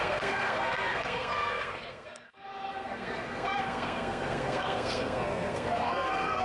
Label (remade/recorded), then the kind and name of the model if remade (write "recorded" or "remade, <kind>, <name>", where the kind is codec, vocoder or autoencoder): remade, codec, SNAC